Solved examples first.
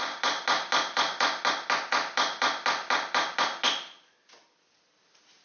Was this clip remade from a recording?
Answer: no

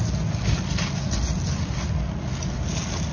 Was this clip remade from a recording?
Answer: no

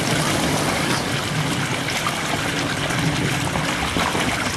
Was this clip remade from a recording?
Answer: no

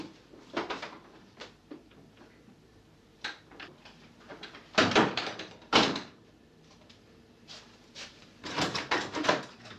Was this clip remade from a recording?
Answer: yes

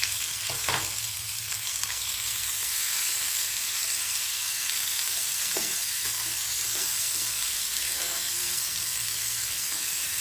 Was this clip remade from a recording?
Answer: yes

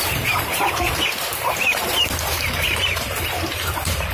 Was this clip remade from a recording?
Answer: yes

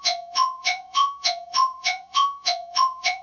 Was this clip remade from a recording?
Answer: yes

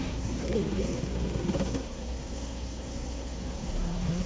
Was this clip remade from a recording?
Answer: yes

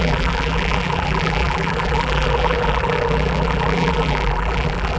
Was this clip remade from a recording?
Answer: yes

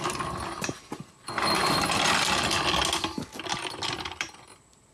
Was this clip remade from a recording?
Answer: no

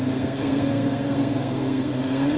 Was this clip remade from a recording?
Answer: yes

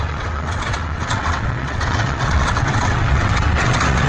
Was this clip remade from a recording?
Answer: yes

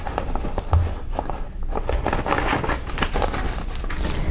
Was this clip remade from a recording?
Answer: no